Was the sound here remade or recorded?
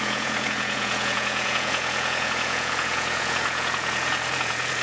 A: remade